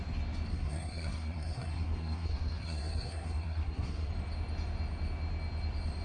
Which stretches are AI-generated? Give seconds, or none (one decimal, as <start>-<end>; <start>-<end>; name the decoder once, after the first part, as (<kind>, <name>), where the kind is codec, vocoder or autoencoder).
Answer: 0.5-4.1 (codec, SNAC)